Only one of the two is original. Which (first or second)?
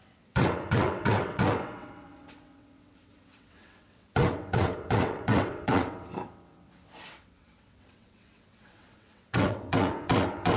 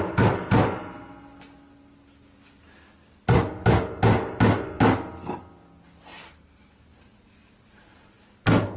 second